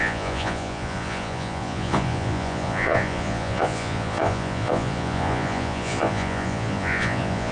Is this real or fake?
fake